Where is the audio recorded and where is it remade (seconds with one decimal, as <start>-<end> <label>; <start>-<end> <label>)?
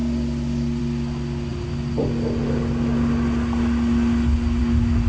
0.0-5.1 recorded